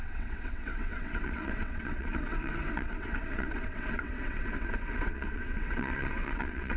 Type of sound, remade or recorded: remade